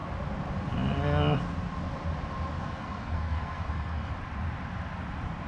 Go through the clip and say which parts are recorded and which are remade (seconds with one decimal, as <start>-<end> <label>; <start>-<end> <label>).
0.0-2.6 recorded; 2.6-4.1 remade; 4.1-5.5 recorded